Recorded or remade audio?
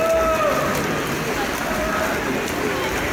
recorded